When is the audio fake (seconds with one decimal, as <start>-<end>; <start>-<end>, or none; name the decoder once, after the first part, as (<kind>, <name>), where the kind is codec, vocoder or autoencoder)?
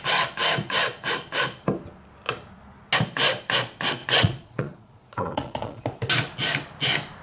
4.0-5.8 (vocoder, Vocos)